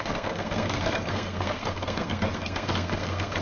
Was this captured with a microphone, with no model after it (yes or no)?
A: no